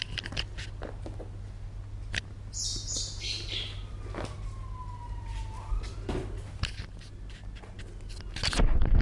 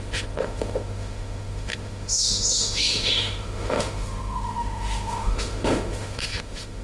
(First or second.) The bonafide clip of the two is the first